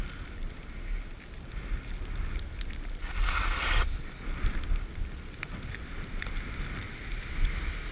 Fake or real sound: real